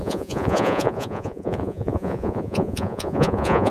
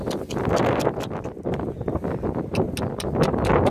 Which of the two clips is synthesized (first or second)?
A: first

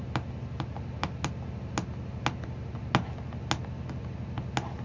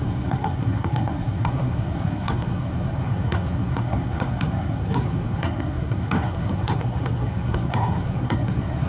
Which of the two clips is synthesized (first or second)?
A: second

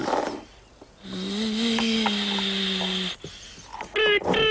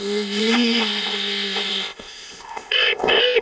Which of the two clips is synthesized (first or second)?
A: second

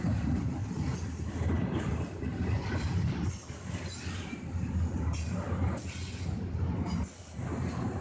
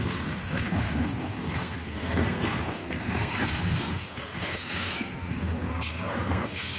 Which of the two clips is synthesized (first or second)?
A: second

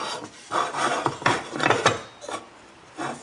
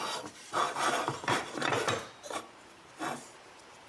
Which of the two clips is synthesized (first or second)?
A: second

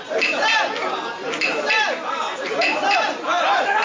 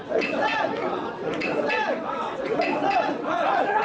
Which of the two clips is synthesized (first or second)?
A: second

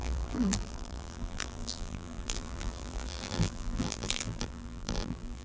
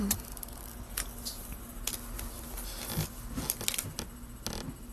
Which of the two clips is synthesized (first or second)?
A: first